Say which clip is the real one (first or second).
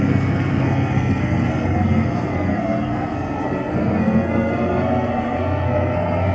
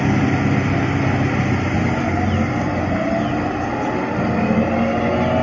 second